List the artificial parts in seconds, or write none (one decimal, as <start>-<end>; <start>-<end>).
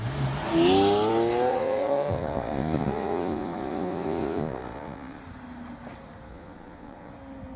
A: 1.5-5.2; 6.3-7.1